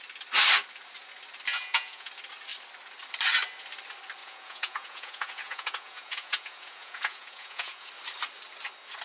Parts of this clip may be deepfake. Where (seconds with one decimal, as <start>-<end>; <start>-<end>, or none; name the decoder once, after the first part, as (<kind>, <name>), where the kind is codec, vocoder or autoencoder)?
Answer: 1.5-2.1 (vocoder, Vocos); 4.2-7.9